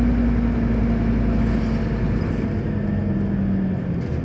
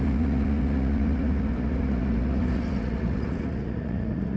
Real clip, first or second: first